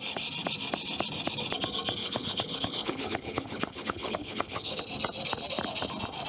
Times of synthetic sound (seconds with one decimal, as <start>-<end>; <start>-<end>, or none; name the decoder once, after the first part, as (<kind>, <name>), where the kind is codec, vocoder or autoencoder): 2.0-4.8 (codec, HILCodec)